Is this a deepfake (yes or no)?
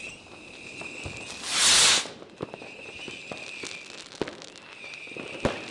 no